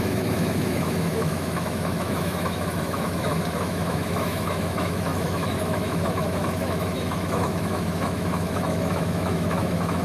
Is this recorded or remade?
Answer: remade